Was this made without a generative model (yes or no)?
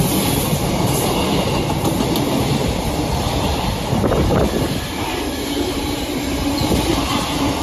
yes